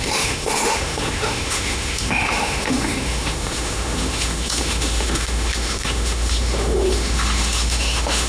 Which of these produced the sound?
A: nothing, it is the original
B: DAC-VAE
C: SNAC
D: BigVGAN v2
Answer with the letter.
B